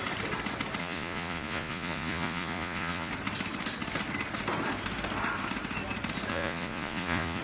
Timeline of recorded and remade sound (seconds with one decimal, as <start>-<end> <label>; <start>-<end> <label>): 0.0-0.8 recorded; 0.8-3.1 remade; 3.1-6.3 recorded; 6.3-7.4 remade